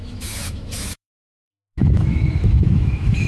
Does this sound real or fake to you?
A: fake